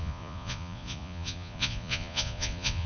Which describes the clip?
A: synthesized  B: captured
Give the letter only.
A